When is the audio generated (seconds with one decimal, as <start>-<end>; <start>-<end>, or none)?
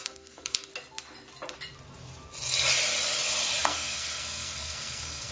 0.0-0.7; 3.6-5.3